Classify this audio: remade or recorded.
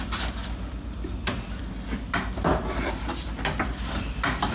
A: recorded